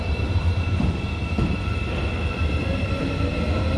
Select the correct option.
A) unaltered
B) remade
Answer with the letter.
B